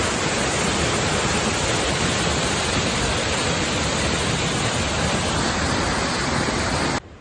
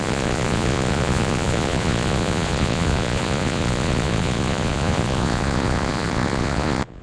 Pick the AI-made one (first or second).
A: second